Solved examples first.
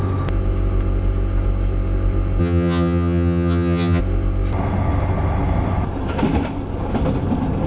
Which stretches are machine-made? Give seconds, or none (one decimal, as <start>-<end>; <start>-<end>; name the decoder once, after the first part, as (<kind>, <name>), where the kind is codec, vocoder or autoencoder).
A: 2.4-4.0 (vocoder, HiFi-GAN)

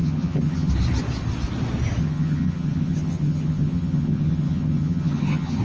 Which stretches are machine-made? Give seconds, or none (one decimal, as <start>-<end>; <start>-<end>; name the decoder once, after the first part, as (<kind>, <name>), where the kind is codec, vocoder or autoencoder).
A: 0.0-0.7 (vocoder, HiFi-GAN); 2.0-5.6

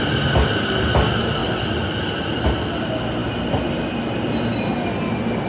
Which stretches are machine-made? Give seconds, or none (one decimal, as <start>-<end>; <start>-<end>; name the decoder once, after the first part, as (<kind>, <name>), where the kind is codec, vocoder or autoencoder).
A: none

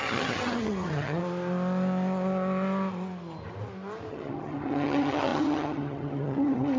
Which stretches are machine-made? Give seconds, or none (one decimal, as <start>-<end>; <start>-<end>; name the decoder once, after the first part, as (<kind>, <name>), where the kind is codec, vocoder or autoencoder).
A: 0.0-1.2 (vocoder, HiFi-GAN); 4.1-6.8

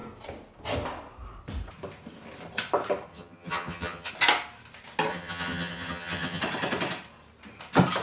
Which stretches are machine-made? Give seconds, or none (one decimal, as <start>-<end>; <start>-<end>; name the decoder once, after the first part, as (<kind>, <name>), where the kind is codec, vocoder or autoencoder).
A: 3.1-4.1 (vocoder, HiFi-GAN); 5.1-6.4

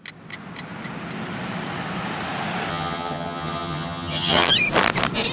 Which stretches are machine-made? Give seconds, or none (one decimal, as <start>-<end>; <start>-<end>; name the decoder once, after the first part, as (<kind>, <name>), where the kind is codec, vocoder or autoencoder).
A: 2.7-4.5 (vocoder, HiFi-GAN)